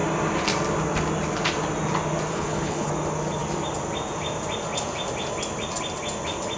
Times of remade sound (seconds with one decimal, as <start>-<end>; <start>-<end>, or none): 2.3-2.9